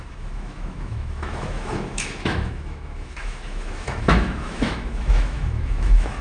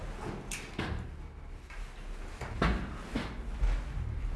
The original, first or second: second